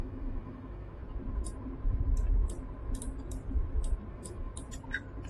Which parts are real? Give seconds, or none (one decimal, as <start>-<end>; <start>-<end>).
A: 1.0-4.1; 4.5-5.3